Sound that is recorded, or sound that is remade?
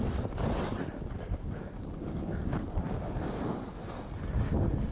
recorded